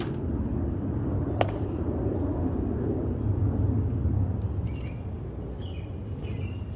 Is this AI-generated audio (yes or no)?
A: no